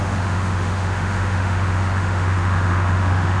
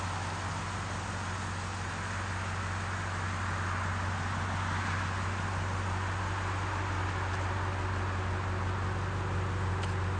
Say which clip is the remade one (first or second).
first